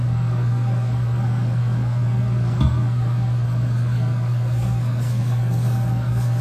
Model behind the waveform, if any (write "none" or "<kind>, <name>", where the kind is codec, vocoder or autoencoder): codec, SNAC